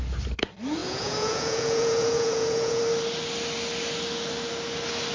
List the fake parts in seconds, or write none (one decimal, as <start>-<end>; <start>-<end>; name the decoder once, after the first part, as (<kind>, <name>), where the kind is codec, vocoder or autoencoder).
0.8-2.8 (vocoder, Vocos)